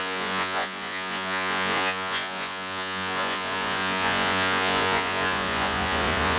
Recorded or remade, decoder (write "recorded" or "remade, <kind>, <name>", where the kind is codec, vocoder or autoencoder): remade, vocoder, Vocos